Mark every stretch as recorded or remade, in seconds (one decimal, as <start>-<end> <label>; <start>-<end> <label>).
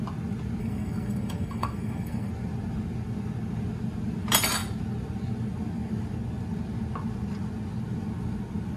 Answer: 0.0-0.6 recorded; 0.6-2.3 remade; 2.3-8.8 recorded